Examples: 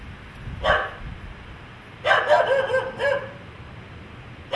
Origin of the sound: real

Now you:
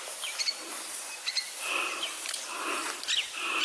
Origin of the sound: real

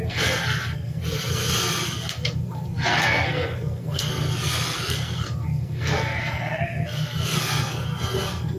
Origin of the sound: fake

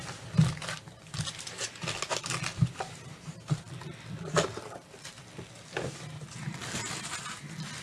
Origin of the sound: real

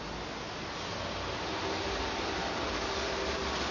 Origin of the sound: real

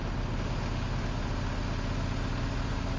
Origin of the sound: real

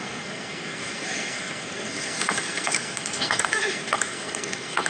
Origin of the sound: fake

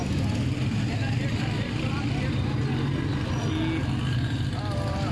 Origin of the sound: real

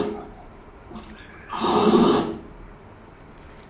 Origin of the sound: real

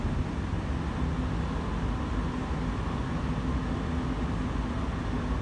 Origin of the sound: real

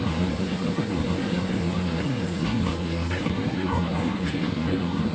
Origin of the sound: fake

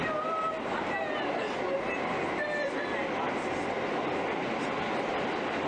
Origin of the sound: real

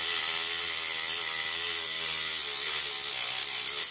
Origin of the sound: real